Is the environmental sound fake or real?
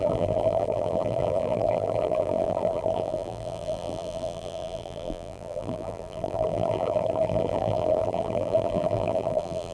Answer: fake